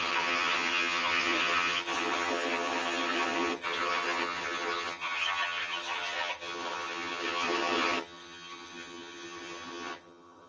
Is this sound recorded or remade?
remade